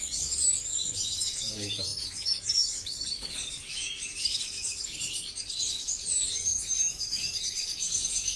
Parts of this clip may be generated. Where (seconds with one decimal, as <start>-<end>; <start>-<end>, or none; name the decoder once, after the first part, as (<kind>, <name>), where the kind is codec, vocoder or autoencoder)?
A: 0.0-8.4 (codec, DAC)